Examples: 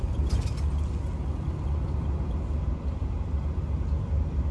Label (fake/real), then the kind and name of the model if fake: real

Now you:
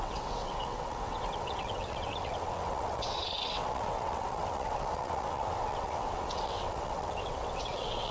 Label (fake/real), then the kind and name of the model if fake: fake, vocoder, WaveNeXt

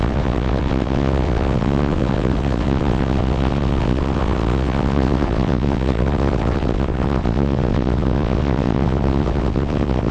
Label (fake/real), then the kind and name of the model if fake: fake, vocoder, WaveNeXt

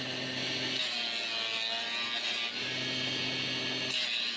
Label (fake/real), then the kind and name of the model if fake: real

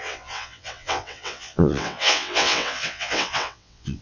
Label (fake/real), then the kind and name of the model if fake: fake, vocoder, WaveNeXt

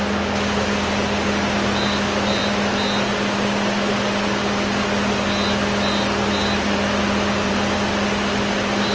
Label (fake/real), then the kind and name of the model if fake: real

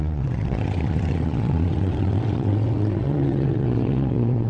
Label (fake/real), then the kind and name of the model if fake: fake, vocoder, WaveNeXt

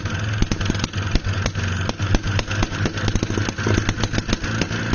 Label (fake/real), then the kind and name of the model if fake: real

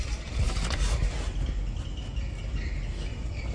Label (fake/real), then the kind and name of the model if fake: real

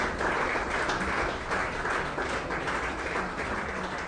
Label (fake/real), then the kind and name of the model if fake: real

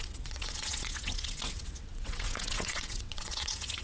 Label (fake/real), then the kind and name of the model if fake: fake, vocoder, WaveNeXt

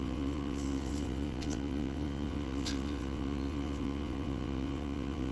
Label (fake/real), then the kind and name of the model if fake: fake, vocoder, WaveNeXt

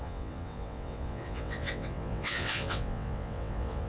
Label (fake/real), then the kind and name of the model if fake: fake, vocoder, WaveNeXt